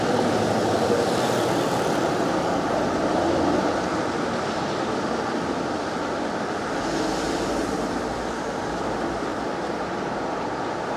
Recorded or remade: remade